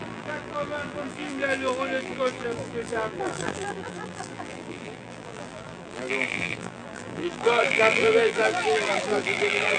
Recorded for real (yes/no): no